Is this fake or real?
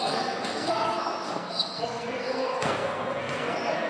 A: fake